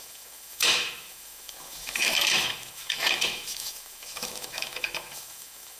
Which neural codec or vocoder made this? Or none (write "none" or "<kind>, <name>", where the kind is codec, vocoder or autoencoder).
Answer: autoencoder, DAC-VAE